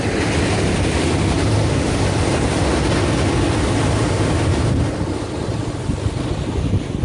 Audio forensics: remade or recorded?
recorded